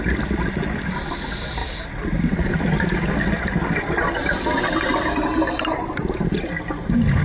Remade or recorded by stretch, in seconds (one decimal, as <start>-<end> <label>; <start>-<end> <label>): 0.0-7.2 recorded